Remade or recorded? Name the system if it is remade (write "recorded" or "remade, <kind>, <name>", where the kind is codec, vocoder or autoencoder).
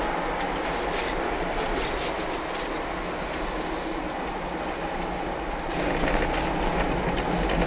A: recorded